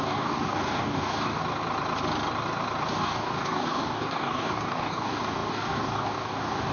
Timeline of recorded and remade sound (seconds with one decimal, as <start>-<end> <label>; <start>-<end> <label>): 0.0-1.4 remade; 1.4-2.9 recorded; 2.9-6.7 remade